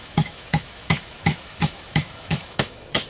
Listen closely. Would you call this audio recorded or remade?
remade